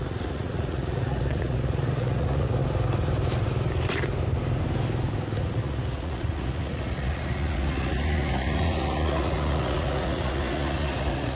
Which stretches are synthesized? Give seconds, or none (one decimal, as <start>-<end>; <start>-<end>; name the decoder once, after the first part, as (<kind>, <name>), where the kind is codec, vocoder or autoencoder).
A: 0.0-2.6 (vocoder, Vocos); 5.4-11.4